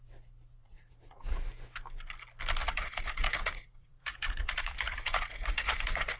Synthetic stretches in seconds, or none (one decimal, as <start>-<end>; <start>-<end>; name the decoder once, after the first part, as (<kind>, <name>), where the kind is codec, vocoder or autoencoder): 0.6-1.5 (vocoder, Vocos); 2.6-6.2